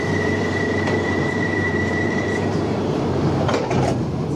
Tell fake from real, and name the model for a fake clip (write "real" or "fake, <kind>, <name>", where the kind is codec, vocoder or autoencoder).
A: fake, vocoder, BigVGAN v2